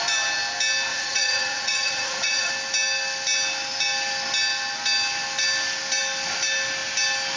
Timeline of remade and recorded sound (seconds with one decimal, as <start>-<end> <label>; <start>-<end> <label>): 0.0-0.9 recorded; 0.9-2.5 remade; 2.5-7.4 recorded